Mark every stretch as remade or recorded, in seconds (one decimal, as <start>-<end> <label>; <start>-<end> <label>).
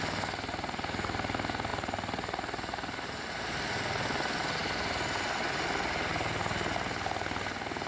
0.0-7.9 recorded